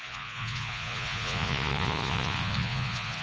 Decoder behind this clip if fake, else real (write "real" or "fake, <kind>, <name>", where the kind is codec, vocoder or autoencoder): fake, vocoder, Vocos